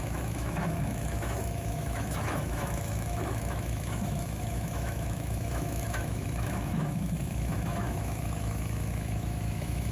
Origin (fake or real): fake